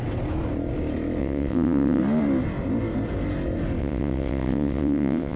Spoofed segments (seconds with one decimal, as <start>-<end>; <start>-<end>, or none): 1.2-2.0; 3.8-5.4